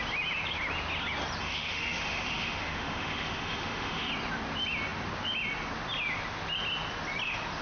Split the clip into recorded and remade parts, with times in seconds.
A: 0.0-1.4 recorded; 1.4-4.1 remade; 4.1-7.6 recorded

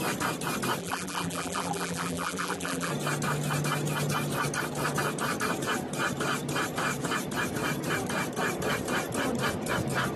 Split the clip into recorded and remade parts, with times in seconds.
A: 0.0-0.8 recorded; 0.8-2.9 remade; 2.9-10.2 recorded

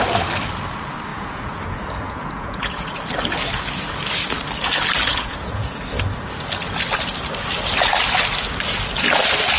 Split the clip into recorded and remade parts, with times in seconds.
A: 0.0-1.1 recorded; 1.1-3.0 remade; 3.0-5.1 recorded; 5.1-5.9 remade; 5.9-9.6 recorded

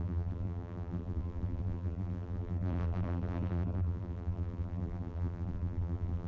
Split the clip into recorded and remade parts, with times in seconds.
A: 0.0-6.3 remade

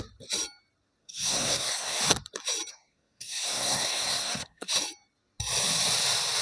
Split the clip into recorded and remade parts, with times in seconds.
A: 0.0-1.0 recorded; 1.0-2.0 remade; 2.0-2.7 recorded; 2.7-4.7 remade; 4.7-6.4 recorded

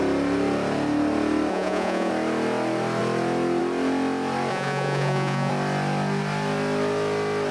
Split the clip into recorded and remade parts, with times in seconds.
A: 0.0-1.5 recorded; 1.5-2.1 remade; 2.1-4.5 recorded; 4.5-5.5 remade; 5.5-7.5 recorded

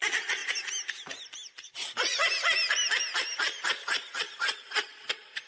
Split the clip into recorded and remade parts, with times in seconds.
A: 0.0-0.4 remade; 0.4-1.7 recorded; 1.7-2.2 remade; 2.2-3.5 recorded; 3.5-5.5 remade